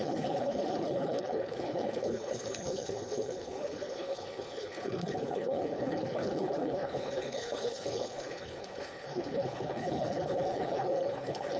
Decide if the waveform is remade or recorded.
remade